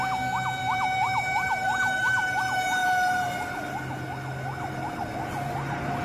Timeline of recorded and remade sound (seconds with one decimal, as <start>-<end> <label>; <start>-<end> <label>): 0.0-0.6 recorded; 0.6-2.4 remade; 2.4-2.8 recorded; 2.8-3.4 remade; 3.4-6.0 recorded